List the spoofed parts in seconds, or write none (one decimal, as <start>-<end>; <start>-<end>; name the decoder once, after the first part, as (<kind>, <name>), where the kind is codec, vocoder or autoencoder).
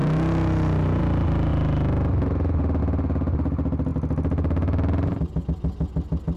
none